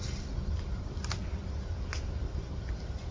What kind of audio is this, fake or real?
real